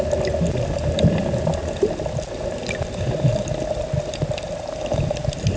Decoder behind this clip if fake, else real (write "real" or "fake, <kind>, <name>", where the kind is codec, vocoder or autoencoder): real